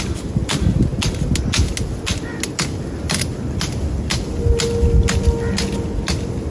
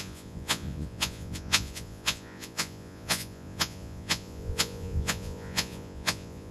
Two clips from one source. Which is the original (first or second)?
first